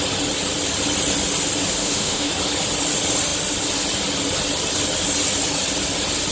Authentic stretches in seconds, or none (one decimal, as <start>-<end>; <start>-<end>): 0.0-1.8; 2.3-6.3

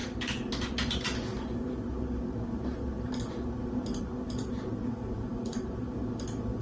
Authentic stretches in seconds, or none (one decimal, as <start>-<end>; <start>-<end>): 0.0-6.6

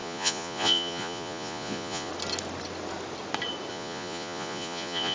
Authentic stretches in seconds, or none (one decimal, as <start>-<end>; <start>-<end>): 2.1-3.7

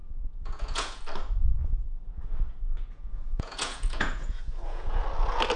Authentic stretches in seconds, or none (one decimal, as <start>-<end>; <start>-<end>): 1.0-1.6; 5.0-5.6